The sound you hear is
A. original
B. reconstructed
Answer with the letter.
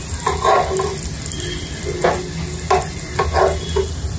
A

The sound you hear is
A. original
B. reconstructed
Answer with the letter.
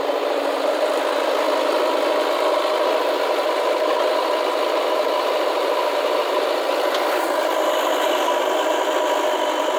A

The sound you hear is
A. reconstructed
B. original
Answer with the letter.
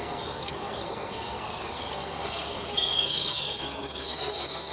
A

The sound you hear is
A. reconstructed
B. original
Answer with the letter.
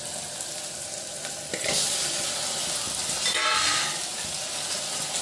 B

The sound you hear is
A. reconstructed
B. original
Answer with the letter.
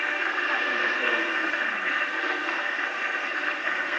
A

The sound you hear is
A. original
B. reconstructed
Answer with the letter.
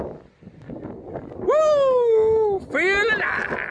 A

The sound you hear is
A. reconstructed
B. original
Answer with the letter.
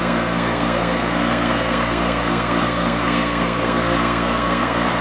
A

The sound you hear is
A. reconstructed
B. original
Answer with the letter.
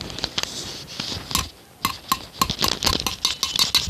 B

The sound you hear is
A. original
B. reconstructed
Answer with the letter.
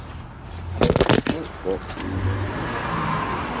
A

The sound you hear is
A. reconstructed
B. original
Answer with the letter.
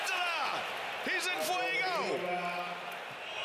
B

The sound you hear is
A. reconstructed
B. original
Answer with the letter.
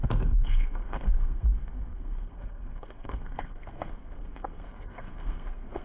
A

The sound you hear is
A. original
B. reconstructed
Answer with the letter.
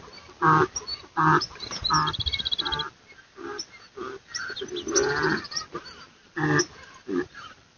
A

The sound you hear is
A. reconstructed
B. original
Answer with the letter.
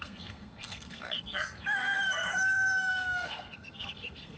A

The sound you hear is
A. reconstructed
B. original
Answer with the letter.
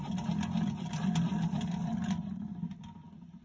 B